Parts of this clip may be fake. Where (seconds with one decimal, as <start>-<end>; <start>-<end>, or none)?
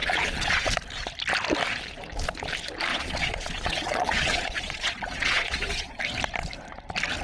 0.0-0.7; 2.9-6.0